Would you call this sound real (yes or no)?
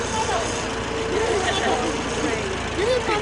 yes